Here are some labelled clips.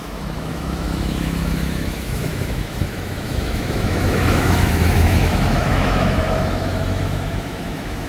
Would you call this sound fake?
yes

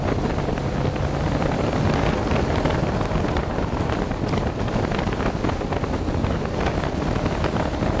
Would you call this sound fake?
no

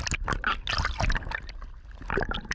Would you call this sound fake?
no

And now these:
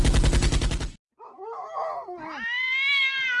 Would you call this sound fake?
no